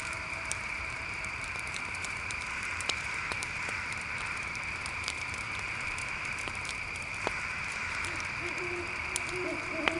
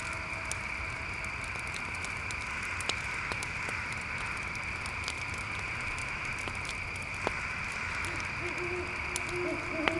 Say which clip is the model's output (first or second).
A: first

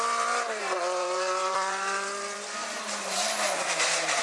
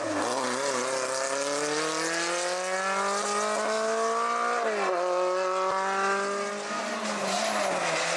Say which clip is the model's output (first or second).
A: first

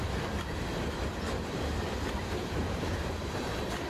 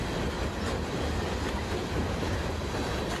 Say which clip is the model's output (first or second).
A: first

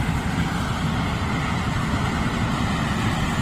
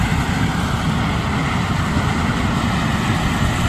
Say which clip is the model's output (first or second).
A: second